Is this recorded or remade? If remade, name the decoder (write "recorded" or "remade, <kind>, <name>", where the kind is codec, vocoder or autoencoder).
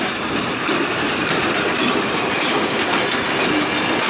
recorded